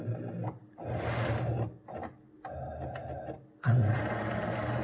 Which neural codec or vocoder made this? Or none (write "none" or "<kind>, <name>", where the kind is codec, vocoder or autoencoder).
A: none